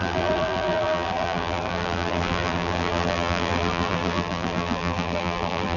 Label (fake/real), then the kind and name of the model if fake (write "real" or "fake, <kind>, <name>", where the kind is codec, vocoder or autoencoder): fake, vocoder, BigVGAN v2